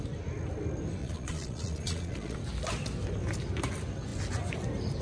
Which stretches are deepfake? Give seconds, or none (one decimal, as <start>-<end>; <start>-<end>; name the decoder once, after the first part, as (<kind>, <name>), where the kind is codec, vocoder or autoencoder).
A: 1.0-2.4 (vocoder, Vocos)

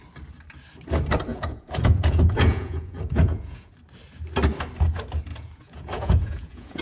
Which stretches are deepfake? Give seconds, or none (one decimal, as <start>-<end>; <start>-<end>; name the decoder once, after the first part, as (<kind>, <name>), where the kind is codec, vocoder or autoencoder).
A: 1.3-3.7 (vocoder, Vocos); 5.3-6.8

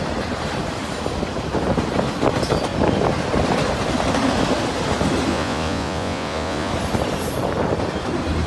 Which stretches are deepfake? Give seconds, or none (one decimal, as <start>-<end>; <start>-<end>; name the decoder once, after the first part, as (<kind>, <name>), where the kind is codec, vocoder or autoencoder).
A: 5.3-6.7 (vocoder, Vocos)

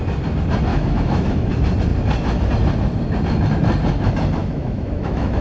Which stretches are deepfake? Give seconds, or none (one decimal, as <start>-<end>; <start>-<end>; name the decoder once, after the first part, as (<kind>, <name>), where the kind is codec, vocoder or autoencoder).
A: 0.7-1.5 (autoencoder, DAC-VAE); 4.4-5.4